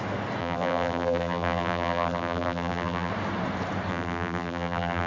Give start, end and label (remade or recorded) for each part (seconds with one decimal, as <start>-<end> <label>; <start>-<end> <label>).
0.0-0.4 recorded; 0.4-3.1 remade; 3.1-3.9 recorded; 3.9-5.1 remade